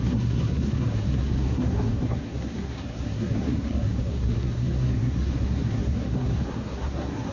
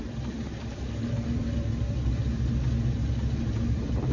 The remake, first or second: first